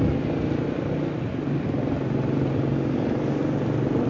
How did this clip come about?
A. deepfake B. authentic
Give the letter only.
B